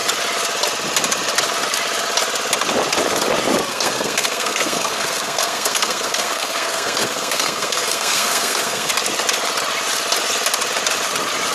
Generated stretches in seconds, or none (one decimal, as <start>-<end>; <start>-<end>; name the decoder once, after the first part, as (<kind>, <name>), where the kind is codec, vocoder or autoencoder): 3.7-8.9 (codec, SNAC)